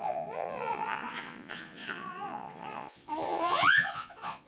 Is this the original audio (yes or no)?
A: no